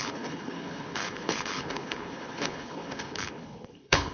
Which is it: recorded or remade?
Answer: remade